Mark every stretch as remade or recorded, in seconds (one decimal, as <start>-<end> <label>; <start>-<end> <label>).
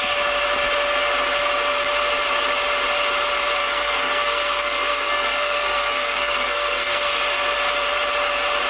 0.0-3.6 recorded; 3.6-7.2 remade; 7.2-8.7 recorded